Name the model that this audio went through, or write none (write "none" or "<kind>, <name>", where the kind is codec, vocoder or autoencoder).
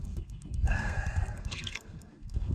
codec, SNAC